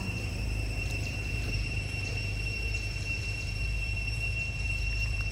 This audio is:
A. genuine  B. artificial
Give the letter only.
B